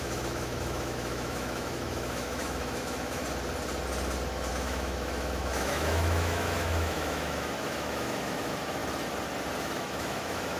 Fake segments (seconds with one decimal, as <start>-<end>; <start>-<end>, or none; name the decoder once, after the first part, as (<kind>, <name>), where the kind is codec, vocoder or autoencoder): 0.0-3.2 (autoencoder, DAC-VAE); 4.5-8.8; 9.6-10.6